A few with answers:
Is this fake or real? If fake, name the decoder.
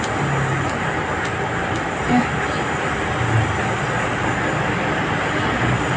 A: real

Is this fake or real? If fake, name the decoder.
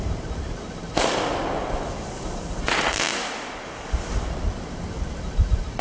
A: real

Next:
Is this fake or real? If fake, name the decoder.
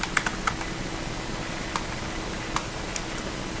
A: real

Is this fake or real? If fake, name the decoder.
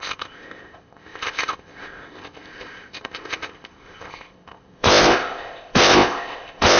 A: fake, codec, ZipCodec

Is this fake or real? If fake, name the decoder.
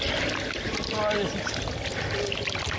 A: real